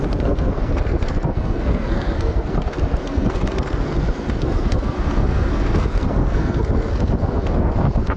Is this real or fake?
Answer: fake